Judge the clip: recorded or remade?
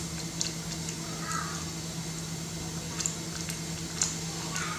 recorded